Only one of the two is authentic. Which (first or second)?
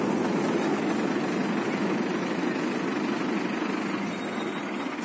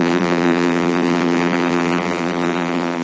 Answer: first